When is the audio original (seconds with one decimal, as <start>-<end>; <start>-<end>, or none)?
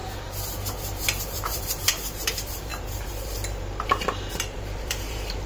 0.0-1.2